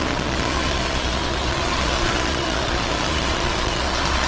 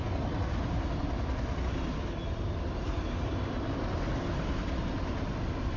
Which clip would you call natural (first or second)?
second